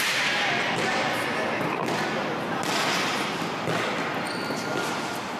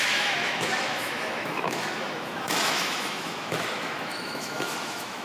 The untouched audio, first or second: first